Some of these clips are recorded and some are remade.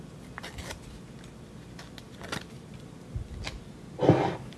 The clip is recorded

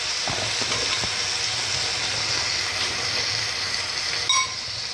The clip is recorded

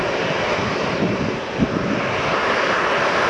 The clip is recorded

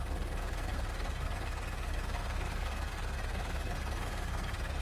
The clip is remade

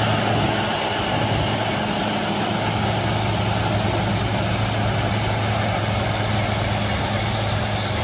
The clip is recorded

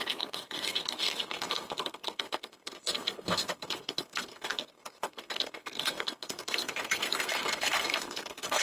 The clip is remade